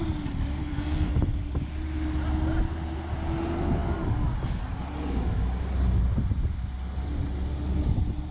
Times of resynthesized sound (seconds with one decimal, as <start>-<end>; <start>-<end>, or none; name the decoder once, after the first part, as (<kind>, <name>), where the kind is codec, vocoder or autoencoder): 0.6-1.1 (codec, SNAC)